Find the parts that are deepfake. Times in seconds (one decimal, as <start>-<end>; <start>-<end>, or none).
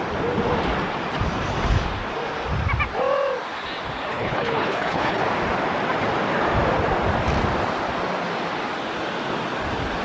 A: 4.1-5.2